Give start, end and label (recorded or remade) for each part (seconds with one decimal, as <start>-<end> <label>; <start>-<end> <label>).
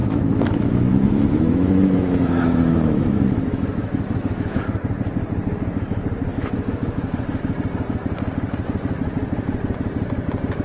0.0-4.6 remade; 4.6-6.3 recorded; 6.3-7.2 remade; 7.2-10.6 recorded